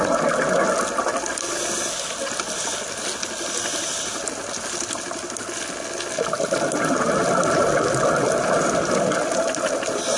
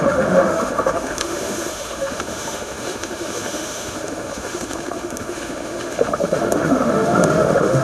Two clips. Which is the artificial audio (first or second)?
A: second